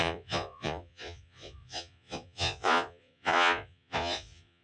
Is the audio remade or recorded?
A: remade